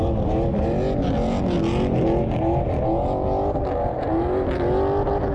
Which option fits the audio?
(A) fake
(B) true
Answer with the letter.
B